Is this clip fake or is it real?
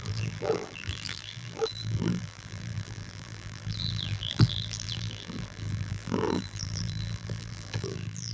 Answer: fake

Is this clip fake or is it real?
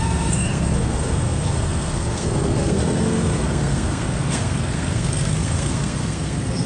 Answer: fake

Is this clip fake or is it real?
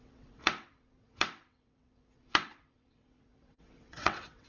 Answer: fake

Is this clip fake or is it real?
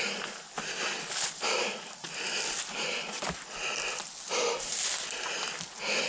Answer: real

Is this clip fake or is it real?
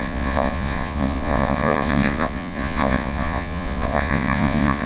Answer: fake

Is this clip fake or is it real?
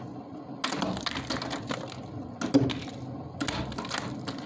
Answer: real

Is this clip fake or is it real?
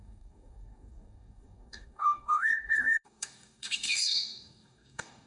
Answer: fake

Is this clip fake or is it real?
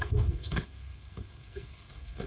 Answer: fake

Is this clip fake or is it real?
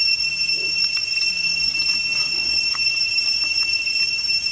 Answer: real